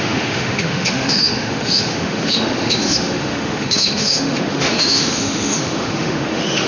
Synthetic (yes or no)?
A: yes